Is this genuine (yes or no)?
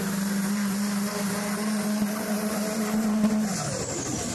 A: yes